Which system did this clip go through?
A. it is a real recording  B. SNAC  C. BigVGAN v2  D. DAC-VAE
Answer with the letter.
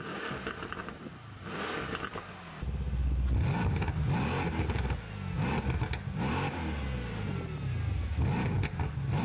A